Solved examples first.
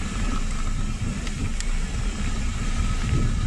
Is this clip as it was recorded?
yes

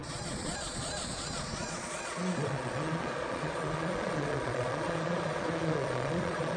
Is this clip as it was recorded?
no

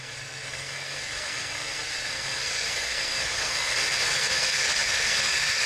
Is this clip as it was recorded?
no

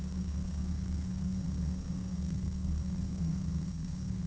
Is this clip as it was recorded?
no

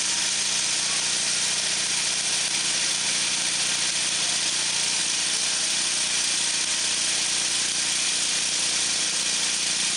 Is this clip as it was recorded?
yes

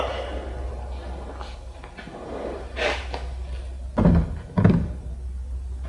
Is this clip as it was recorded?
yes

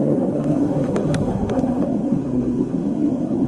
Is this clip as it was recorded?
no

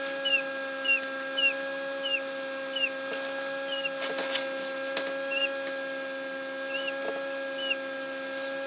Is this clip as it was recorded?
yes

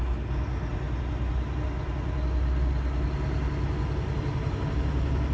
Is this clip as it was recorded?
yes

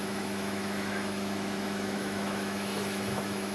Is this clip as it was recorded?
no